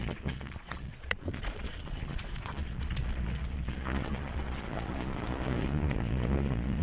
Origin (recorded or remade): remade